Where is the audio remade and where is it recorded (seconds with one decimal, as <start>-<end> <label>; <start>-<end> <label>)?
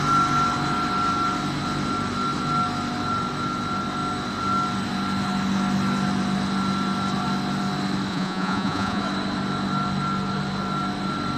0.0-8.1 recorded; 8.1-9.0 remade; 9.0-11.4 recorded